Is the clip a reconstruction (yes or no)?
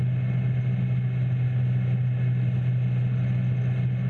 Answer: no